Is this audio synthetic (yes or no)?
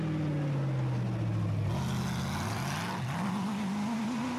no